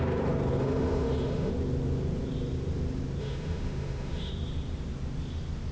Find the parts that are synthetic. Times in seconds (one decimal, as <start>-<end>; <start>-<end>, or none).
0.6-1.5; 3.2-4.3